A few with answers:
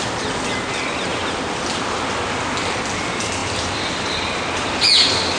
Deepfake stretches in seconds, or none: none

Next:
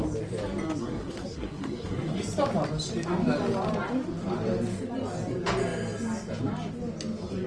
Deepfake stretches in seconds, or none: 0.8-2.2 (codec, SNAC)

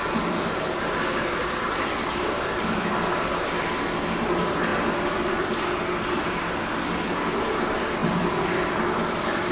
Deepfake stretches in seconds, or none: none